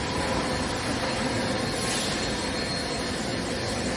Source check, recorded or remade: recorded